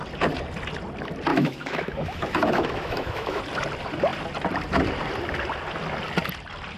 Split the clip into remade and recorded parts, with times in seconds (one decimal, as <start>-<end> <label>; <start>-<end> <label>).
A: 0.0-1.3 recorded; 1.3-3.4 remade; 3.4-6.8 recorded